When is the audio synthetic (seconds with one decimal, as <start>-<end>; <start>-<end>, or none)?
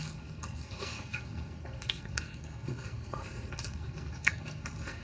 0.0-5.0